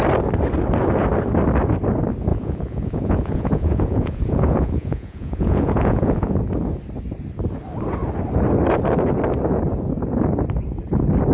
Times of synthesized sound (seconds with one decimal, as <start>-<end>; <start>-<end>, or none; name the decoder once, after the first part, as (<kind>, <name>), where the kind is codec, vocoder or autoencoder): 2.3-6.4 (vocoder, Vocos)